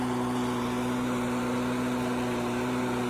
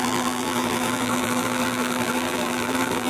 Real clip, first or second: first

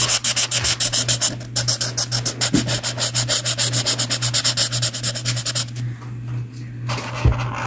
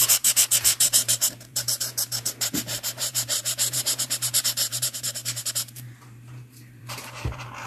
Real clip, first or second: first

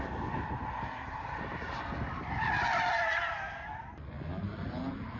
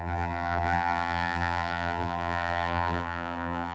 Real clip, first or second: first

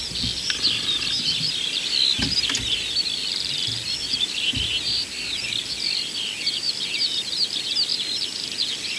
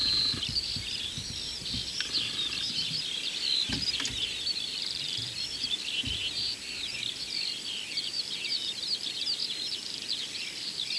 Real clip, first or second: first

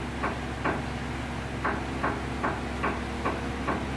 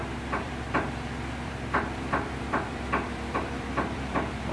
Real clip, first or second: first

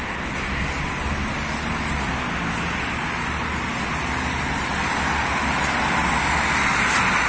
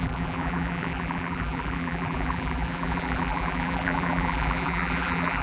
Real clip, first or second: first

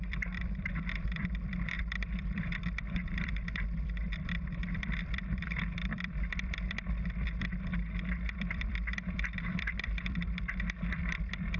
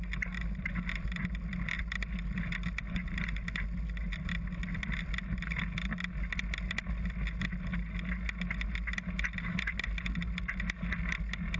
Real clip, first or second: second